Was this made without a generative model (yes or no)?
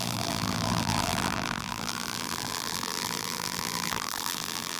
no